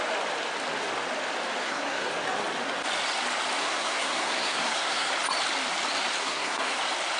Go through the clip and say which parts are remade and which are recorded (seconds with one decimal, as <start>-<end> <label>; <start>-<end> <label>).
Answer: 0.0-1.6 recorded; 1.6-2.1 remade; 2.1-3.6 recorded; 3.6-5.1 remade; 5.1-6.2 recorded; 6.2-6.8 remade; 6.8-7.2 recorded